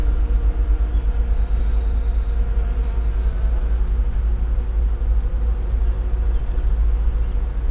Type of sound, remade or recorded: recorded